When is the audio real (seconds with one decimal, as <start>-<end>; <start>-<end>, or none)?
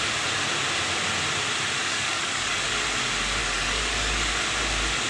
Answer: 0.0-1.8; 2.7-3.4; 4.3-5.1